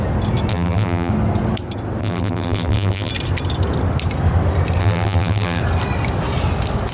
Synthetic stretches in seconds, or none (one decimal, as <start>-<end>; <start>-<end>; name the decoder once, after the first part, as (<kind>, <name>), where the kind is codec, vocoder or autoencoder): 0.5-1.1 (vocoder, BigVGAN v2); 2.0-3.1; 4.8-5.6